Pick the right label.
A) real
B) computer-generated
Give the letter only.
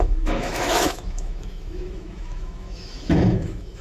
B